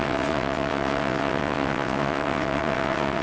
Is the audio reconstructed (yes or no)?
yes